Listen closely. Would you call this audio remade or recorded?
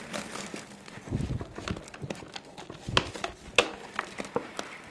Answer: recorded